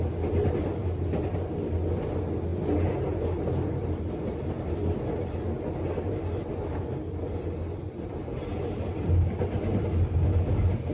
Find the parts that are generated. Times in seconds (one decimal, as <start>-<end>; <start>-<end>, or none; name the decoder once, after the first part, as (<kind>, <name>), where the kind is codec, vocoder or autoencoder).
none